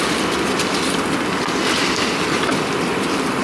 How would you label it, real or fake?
real